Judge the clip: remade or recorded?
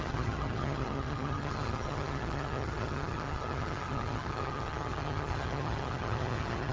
remade